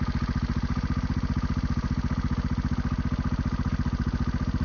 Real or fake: real